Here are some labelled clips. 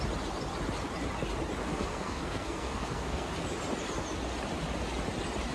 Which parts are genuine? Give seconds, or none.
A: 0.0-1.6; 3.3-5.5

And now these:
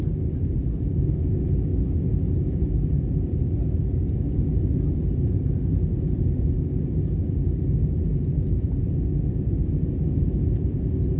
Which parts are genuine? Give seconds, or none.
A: 0.0-8.1; 8.7-11.2

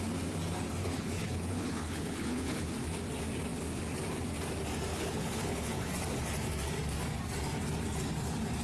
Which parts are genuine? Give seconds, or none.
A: 0.0-0.8; 2.7-4.9; 5.9-8.6

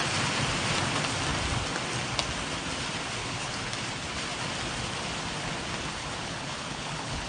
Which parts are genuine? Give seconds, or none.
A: 0.0-3.2; 3.7-6.0

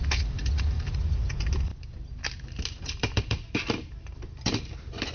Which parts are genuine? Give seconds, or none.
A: 1.7-2.8

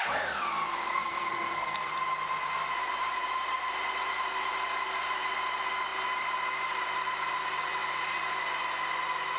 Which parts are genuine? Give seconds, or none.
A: 0.0-0.9; 1.9-9.4

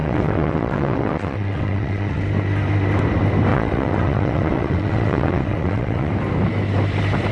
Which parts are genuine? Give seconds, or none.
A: 2.2-3.5; 6.1-7.3